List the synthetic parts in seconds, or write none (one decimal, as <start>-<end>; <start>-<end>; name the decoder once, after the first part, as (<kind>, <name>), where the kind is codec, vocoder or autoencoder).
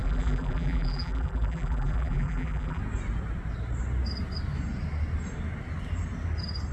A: 0.0-2.8 (vocoder, BigVGAN v2)